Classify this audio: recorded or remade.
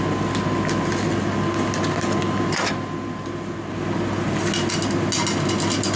recorded